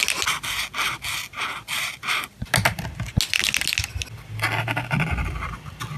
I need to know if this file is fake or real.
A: real